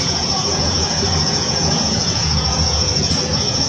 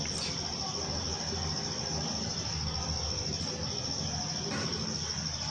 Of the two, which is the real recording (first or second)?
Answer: second